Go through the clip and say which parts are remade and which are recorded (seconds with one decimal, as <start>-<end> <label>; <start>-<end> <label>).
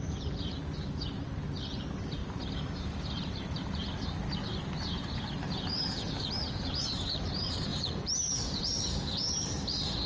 0.0-10.1 remade